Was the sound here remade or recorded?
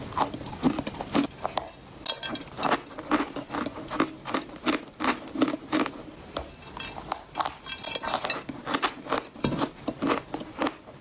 recorded